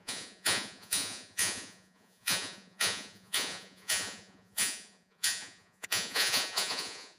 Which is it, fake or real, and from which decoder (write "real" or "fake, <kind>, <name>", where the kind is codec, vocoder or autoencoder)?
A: fake, vocoder, Vocos